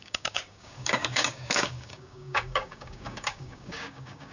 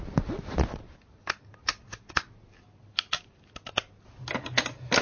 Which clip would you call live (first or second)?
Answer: second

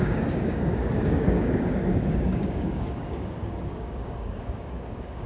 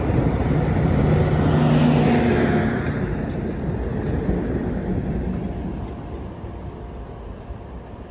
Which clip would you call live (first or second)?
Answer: second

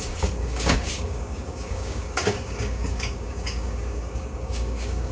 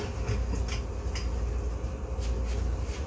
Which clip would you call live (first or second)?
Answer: second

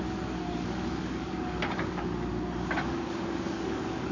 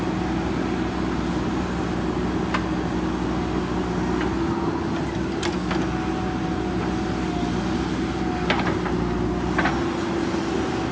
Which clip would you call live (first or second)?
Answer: second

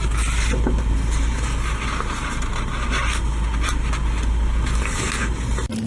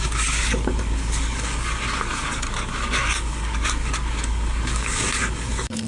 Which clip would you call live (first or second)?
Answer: first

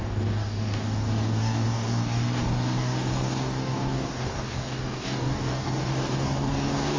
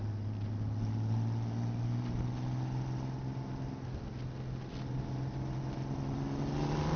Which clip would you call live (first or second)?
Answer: second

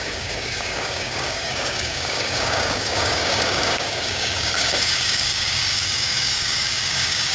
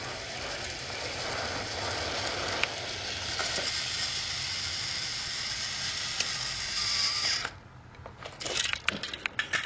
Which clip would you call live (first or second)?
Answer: second